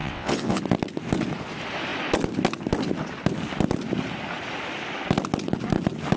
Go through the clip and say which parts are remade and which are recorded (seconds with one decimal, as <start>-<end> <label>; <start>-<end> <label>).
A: 0.0-0.6 remade; 0.6-6.2 recorded

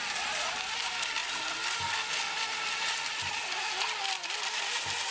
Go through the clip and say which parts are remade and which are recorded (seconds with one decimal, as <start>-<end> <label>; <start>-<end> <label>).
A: 0.0-5.1 recorded

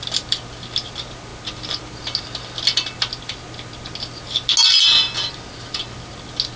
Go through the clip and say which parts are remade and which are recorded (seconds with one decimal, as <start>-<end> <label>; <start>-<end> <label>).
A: 0.0-6.6 recorded